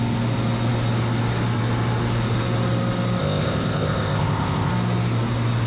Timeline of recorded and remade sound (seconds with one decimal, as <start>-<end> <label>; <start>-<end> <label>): 0.0-3.2 recorded; 3.2-4.7 remade; 4.7-5.7 recorded